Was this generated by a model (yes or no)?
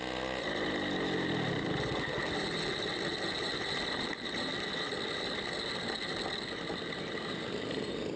no